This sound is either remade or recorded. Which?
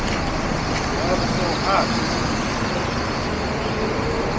recorded